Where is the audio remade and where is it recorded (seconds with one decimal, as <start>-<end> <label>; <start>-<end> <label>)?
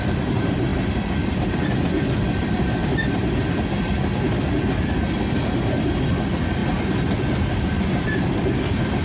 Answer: 0.0-9.0 recorded